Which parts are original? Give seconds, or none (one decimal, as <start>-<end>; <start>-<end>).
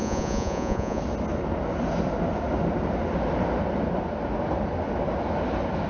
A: 1.0-5.9